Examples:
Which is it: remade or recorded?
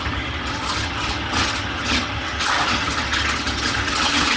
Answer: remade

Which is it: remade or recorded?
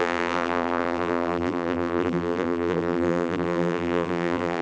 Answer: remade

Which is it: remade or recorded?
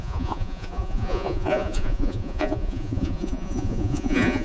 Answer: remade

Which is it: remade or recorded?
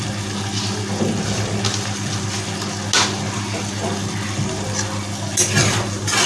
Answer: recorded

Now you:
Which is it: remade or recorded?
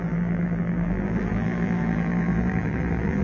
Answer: remade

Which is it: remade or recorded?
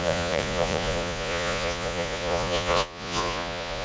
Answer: remade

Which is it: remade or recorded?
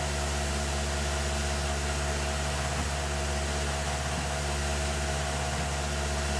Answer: recorded